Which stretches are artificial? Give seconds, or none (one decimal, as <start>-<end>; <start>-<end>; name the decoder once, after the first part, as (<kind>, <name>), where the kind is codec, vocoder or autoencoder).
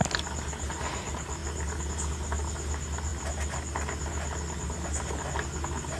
none